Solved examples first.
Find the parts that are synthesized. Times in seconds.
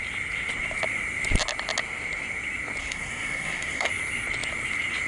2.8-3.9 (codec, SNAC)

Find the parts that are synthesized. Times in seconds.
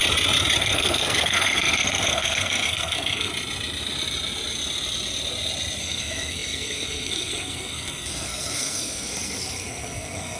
0.6-3.3 (codec, SNAC); 5.8-10.4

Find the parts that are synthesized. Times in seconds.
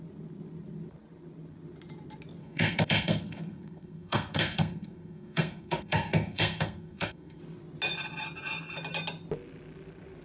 2.4-7.4 (codec, SNAC)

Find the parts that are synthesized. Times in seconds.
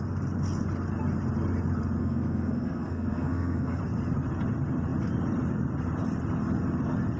2.0-3.8 (codec, SNAC)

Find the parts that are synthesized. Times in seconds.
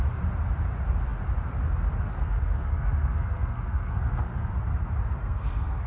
2.1-4.5 (codec, SNAC); 5.2-5.9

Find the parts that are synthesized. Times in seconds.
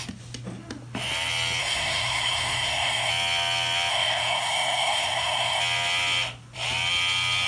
1.6-3.1 (codec, SNAC); 3.9-5.6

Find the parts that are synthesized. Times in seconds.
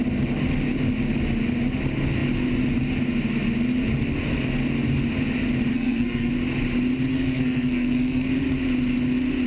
5.7-6.3 (codec, SNAC); 7.1-8.3